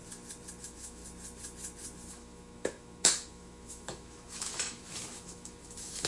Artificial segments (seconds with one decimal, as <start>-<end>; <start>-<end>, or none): 0.6-1.0; 2.1-6.1